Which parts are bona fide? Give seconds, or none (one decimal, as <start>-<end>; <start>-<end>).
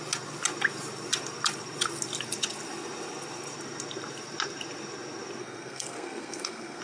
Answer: 0.0-5.4